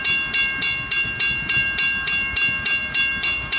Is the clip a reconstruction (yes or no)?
no